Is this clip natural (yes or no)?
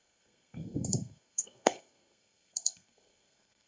no